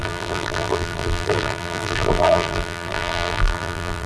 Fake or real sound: fake